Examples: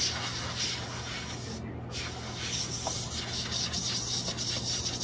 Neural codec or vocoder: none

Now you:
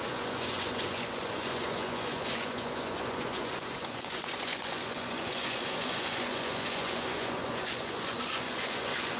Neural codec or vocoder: vocoder, Vocos